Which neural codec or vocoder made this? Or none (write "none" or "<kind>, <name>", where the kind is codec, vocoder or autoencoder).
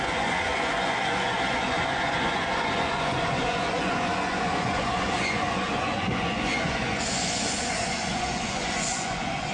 vocoder, Vocos